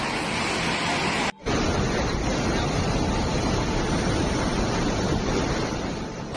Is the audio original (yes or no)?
yes